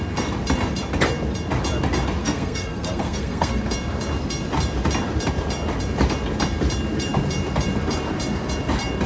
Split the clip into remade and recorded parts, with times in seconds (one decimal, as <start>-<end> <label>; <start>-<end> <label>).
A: 0.0-2.2 recorded; 2.2-3.6 remade; 3.6-9.1 recorded